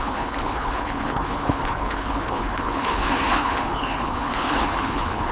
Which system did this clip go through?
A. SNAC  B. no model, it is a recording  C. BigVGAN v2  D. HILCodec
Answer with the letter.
D